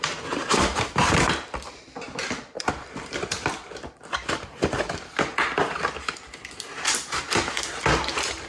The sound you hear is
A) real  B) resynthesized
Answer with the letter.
B